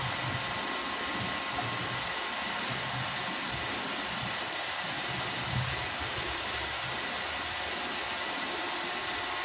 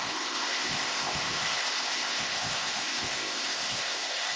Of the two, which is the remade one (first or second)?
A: second